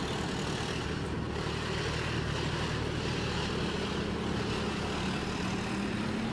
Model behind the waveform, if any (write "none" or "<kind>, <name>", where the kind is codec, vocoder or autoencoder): none